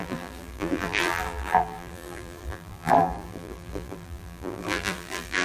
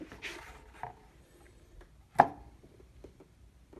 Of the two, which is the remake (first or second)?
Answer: first